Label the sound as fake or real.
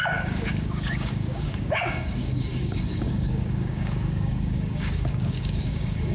fake